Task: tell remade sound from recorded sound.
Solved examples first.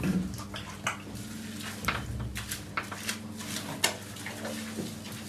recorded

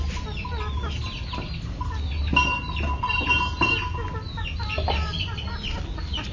recorded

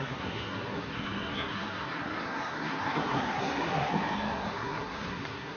remade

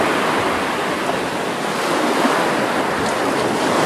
recorded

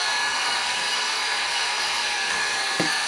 remade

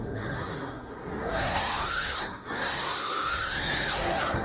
remade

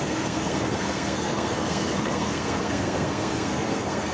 remade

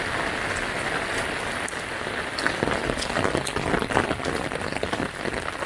recorded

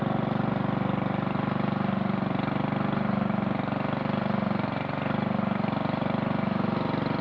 recorded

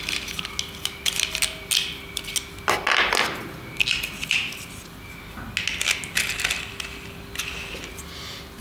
recorded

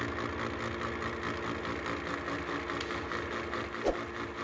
recorded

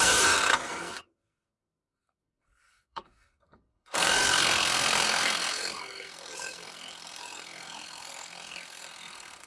remade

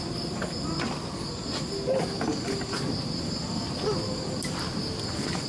recorded